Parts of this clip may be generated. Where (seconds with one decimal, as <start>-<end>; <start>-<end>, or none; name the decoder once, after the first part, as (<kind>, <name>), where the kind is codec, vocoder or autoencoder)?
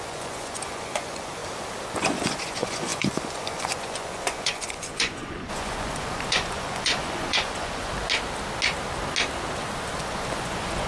0.0-1.4 (vocoder, Vocos); 2.0-7.9; 10.0-10.9